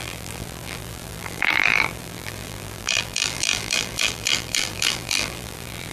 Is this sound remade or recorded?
remade